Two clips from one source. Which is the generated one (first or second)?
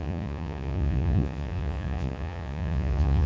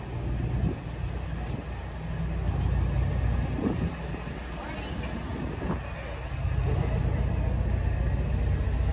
first